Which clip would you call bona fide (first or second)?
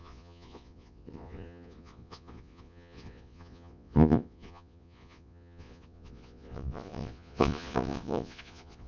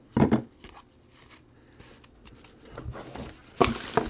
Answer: second